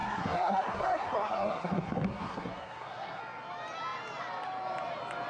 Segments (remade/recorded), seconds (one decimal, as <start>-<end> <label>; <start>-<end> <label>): 0.0-3.2 remade; 3.2-5.3 recorded